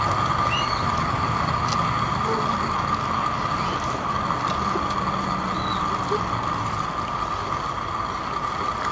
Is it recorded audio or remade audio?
recorded